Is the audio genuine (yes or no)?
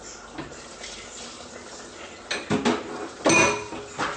yes